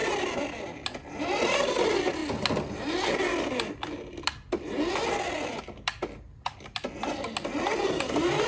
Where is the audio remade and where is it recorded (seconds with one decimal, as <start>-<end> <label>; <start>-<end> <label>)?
0.0-8.5 recorded